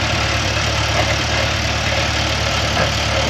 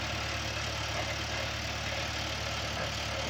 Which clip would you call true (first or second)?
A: second